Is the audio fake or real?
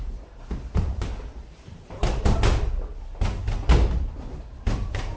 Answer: real